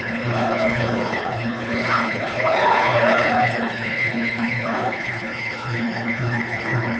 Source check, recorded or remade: remade